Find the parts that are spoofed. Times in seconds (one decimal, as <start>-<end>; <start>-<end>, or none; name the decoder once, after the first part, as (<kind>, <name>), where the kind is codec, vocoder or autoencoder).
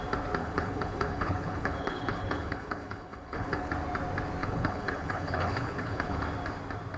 0.4-3.7 (codec, HILCodec); 4.4-6.2